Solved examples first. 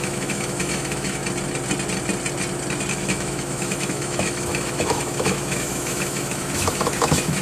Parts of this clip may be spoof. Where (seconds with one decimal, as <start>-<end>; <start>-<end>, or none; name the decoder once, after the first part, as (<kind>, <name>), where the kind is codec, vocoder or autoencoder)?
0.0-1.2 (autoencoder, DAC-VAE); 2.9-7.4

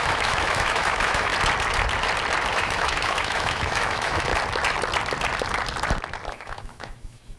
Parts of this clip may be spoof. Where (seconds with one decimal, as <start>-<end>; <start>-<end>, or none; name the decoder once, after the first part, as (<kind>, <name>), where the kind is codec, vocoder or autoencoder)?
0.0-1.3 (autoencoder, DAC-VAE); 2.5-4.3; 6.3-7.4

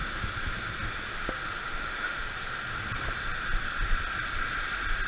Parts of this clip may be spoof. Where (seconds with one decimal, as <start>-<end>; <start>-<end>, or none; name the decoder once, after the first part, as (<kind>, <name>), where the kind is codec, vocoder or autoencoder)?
1.7-2.2 (autoencoder, DAC-VAE)

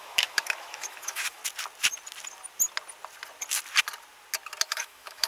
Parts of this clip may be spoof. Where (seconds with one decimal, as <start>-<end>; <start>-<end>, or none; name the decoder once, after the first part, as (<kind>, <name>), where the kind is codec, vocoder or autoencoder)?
0.0-1.4 (autoencoder, DAC-VAE); 4.6-5.3

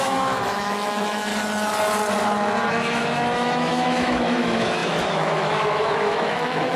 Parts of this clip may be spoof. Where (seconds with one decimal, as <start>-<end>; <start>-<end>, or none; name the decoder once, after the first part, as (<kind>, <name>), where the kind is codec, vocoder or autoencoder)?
0.0-1.3 (autoencoder, DAC-VAE); 2.7-6.8